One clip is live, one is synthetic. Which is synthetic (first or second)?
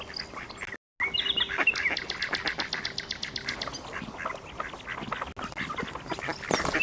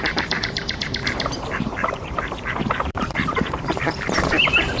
second